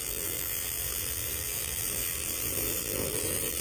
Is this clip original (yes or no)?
no